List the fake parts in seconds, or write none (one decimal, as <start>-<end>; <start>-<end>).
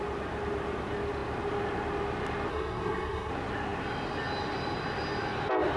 2.5-3.3